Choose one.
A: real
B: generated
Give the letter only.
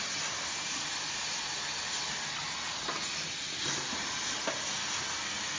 A